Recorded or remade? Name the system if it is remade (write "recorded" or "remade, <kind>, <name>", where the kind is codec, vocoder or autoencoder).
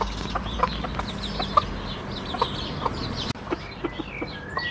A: recorded